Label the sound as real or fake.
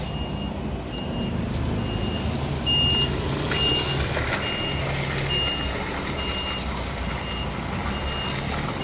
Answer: real